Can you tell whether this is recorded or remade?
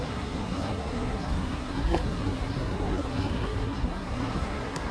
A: remade